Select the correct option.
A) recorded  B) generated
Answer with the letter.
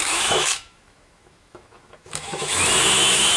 B